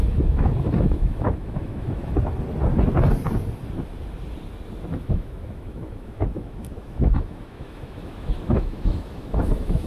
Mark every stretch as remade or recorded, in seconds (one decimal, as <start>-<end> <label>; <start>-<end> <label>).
0.0-2.1 remade; 2.1-4.9 recorded; 4.9-9.9 remade